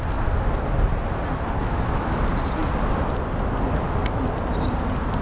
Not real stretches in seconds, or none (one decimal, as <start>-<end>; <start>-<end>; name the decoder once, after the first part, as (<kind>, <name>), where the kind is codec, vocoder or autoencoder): 1.6-2.2 (autoencoder, DAC-VAE)